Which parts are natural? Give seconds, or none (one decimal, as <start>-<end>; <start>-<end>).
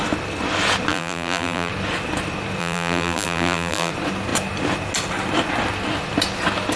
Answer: 0.0-0.9; 1.7-2.6; 3.9-6.8